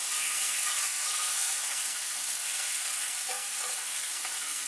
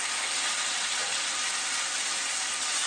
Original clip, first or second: second